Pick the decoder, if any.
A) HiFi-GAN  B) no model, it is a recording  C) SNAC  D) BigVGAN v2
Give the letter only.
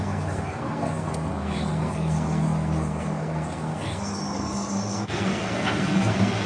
C